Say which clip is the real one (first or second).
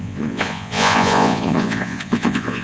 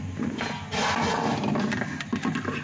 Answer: second